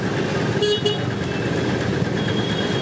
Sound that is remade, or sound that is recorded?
recorded